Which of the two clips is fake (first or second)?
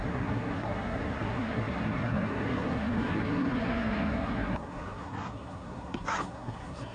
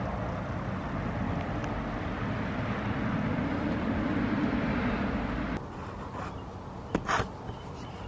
first